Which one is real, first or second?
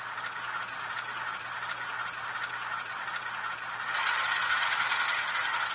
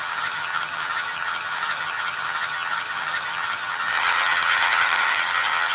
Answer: first